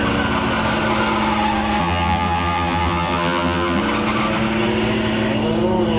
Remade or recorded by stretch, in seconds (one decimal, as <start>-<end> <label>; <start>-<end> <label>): 0.0-1.8 recorded; 1.8-3.8 remade; 3.8-6.0 recorded